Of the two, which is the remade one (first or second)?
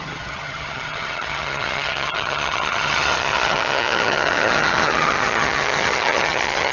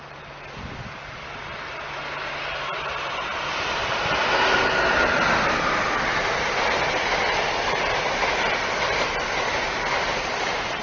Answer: first